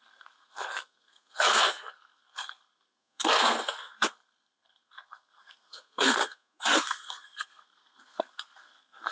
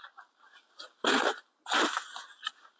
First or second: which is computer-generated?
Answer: first